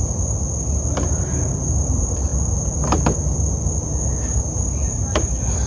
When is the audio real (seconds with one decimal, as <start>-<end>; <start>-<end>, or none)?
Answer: 0.0-5.7